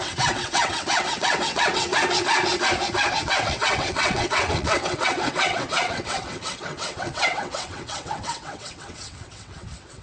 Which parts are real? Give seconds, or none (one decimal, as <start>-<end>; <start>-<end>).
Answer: 1.9-3.1